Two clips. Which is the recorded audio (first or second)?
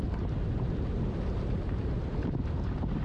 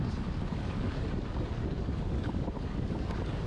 first